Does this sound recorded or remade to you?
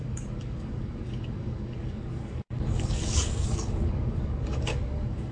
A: remade